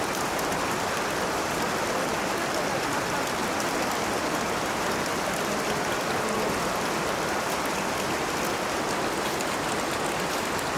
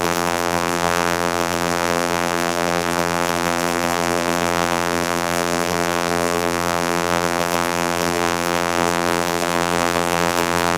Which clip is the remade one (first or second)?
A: second